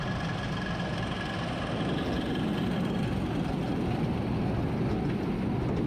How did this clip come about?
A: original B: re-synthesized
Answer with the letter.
A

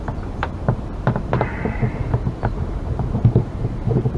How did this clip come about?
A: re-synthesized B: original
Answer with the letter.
A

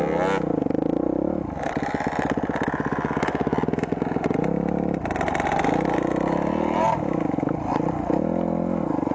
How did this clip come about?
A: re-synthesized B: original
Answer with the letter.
B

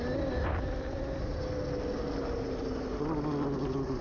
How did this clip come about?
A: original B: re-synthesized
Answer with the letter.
A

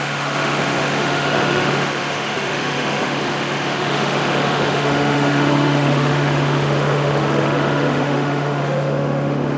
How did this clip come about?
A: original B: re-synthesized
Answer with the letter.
B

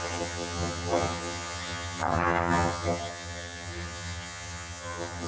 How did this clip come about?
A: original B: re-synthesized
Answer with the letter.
B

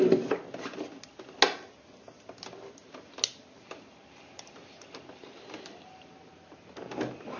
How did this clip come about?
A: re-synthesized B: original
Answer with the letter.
B